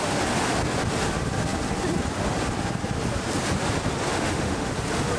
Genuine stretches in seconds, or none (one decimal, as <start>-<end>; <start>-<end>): 0.0-4.1; 4.7-5.2